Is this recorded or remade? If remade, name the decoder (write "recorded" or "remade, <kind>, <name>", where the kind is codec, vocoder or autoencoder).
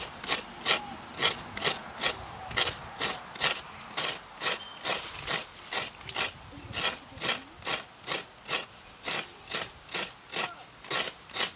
recorded